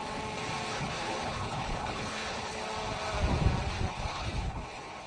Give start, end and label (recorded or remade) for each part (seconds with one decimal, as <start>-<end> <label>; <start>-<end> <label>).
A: 0.0-0.7 recorded; 0.7-2.6 remade; 2.6-3.9 recorded; 3.9-5.1 remade